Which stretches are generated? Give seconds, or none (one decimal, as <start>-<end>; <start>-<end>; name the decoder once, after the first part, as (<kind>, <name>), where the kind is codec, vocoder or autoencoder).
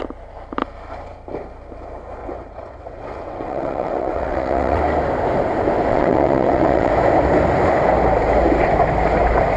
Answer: 2.2-4.8 (vocoder, WaveNeXt); 5.9-6.9